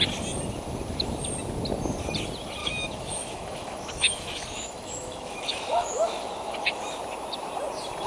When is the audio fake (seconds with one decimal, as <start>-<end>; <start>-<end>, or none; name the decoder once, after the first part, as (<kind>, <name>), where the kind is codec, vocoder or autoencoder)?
2.6-6.8 (autoencoder, DAC-VAE)